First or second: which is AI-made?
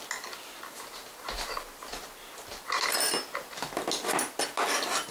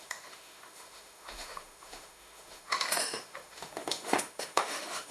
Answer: second